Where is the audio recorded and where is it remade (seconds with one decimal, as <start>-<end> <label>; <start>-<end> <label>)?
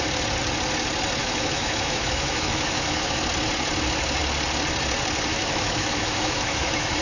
0.0-1.2 recorded; 1.2-3.2 remade; 3.2-5.3 recorded; 5.3-7.0 remade